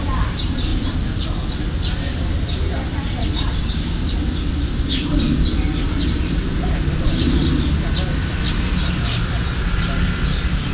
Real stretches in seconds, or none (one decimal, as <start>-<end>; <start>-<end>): 0.0-10.7